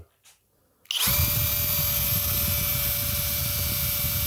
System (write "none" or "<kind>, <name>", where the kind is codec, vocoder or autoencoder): none